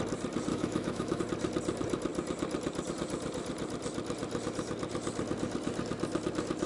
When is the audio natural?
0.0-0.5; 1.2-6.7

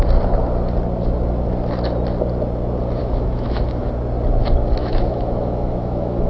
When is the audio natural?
0.0-3.0; 3.9-4.8

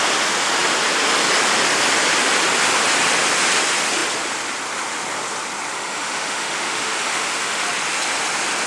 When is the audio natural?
0.0-5.7; 7.6-8.7

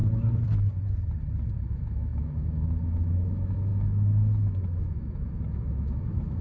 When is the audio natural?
0.0-1.6

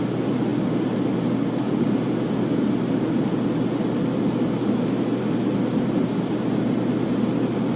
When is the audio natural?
0.0-7.8

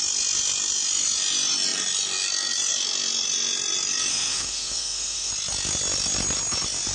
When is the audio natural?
0.0-4.1; 5.3-6.9

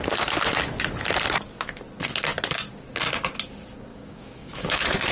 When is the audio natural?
0.0-3.9